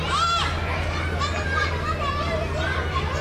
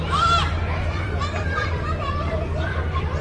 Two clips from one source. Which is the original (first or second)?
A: first